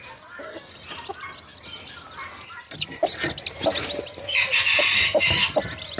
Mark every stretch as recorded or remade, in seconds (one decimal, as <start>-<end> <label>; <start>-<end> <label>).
0.0-6.0 recorded

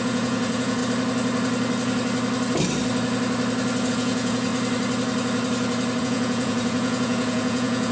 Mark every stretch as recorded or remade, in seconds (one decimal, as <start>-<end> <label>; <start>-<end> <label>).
0.0-0.8 remade; 0.8-3.9 recorded; 3.9-4.5 remade; 4.5-6.0 recorded; 6.0-7.9 remade

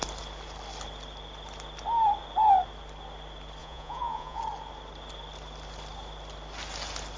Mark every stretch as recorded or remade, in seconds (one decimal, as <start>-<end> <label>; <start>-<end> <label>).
0.0-3.6 recorded; 3.6-4.4 remade; 4.4-7.2 recorded

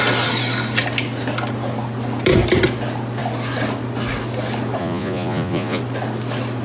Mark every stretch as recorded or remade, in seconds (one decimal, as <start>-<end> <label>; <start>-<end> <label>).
0.0-4.8 recorded; 4.8-5.8 remade; 5.8-6.6 recorded

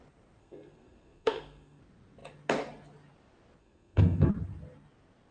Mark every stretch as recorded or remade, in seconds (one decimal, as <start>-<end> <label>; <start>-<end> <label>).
0.0-0.4 recorded; 0.4-1.8 remade; 1.8-3.6 recorded; 3.6-4.3 remade; 4.3-5.3 recorded

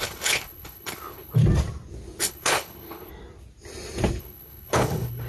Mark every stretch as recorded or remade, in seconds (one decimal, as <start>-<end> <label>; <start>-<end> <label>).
0.0-1.4 remade; 1.4-2.2 recorded; 2.2-3.1 remade; 3.1-4.2 recorded; 4.2-5.3 remade

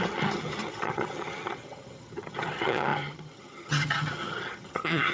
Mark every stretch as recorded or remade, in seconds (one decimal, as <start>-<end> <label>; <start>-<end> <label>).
0.0-5.1 remade

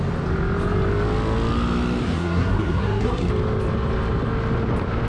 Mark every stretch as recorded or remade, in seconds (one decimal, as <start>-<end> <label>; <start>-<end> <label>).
0.0-2.0 recorded; 2.0-3.3 remade; 3.3-5.1 recorded